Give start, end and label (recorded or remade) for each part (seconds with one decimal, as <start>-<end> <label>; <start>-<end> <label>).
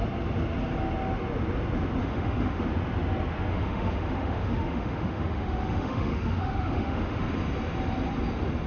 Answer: 0.0-2.0 recorded; 2.0-2.6 remade; 2.6-3.5 recorded; 3.5-7.2 remade; 7.2-8.7 recorded